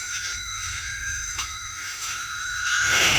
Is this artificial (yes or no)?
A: yes